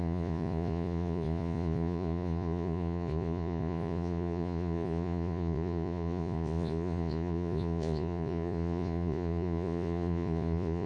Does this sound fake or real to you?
fake